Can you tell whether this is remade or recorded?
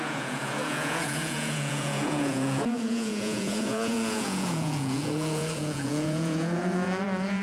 remade